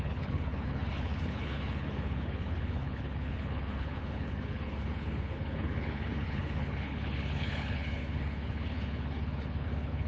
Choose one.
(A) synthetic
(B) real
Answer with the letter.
A